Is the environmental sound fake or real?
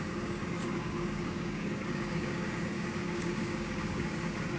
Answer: fake